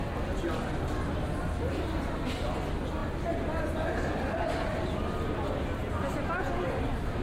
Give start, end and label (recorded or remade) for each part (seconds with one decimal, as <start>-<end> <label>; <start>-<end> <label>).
0.0-7.2 recorded